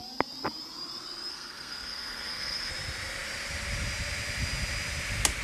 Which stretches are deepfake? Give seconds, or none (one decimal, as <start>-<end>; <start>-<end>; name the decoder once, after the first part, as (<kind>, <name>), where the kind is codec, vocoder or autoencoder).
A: 1.3-2.7 (codec, SNAC)